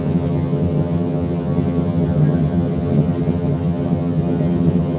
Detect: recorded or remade remade